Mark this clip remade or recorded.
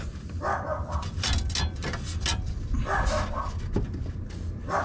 recorded